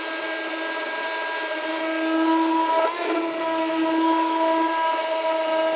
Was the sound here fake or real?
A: real